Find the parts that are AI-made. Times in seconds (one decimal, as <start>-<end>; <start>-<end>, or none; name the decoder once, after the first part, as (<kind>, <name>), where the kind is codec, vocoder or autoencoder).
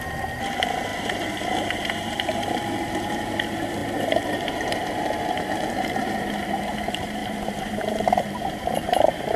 0.0-9.4 (vocoder, BigVGAN v2)